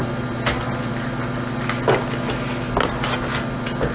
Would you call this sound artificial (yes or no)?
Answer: no